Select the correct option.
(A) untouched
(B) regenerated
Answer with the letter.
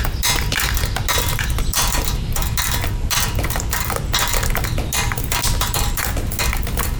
A